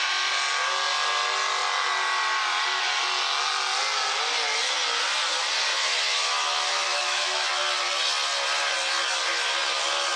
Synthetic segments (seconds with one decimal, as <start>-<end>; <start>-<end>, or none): 5.7-7.5